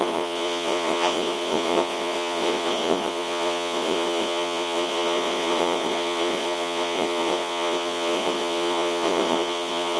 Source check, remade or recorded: remade